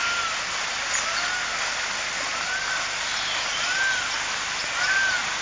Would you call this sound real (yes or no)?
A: yes